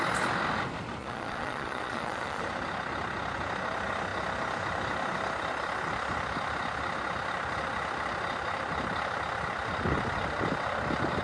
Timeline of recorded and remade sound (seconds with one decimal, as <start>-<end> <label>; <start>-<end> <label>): 0.0-1.0 recorded; 1.0-2.4 remade; 2.4-11.2 recorded